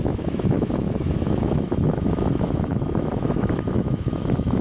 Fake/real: fake